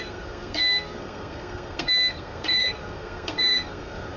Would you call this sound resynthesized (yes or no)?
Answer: yes